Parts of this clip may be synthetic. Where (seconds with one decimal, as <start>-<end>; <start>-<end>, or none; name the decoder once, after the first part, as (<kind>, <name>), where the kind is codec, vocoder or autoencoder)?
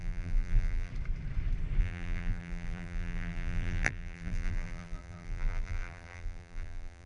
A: 0.0-0.9 (vocoder, BigVGAN v2); 1.8-7.1